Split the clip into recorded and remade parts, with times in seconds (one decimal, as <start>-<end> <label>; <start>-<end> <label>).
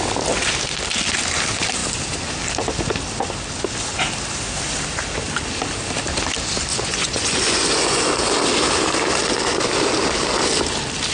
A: 0.0-6.7 recorded; 6.7-8.0 remade; 8.0-11.1 recorded